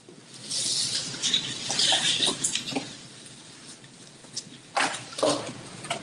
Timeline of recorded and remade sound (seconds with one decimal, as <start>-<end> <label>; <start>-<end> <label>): 0.0-0.7 recorded; 0.7-3.3 remade; 3.3-4.2 recorded; 4.2-6.0 remade